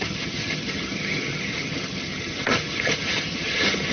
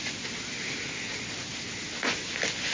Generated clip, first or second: first